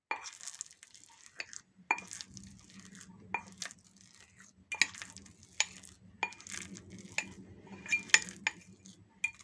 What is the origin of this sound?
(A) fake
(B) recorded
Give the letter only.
B